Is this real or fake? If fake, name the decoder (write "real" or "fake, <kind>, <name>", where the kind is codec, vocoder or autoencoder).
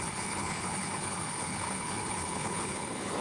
fake, codec, HILCodec